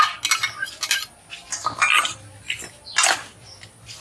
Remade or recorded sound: recorded